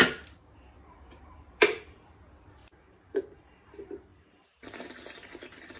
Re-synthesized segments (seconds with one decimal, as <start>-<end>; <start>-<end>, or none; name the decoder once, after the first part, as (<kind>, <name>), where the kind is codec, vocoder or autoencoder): 0.0-2.1 (vocoder, BigVGAN v2); 2.6-3.2; 4.1-4.9